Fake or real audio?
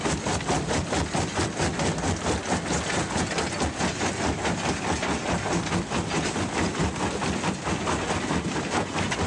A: real